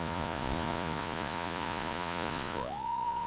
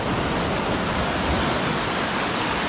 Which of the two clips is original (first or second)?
second